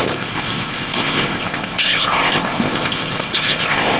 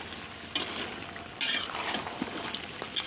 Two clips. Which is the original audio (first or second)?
second